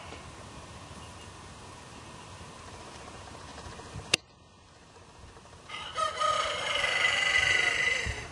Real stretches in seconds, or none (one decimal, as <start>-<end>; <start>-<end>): none